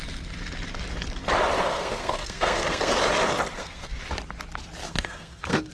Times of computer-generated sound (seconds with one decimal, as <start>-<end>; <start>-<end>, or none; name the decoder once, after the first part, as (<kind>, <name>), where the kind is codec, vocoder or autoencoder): 1.6-2.9 (codec, SNAC); 3.5-4.0; 4.8-5.7